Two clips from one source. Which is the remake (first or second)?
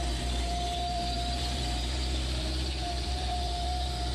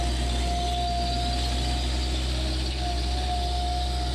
first